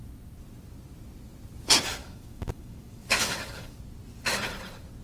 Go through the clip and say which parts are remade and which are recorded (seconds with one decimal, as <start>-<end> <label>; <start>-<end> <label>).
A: 0.0-2.0 recorded; 2.0-3.8 remade; 3.8-5.0 recorded